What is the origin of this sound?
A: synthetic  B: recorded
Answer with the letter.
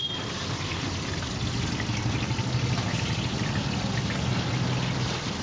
B